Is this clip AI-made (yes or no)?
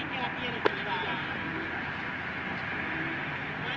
no